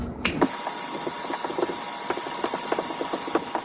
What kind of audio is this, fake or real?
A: real